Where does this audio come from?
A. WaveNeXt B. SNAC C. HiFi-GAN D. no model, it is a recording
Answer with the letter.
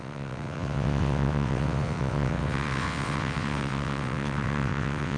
A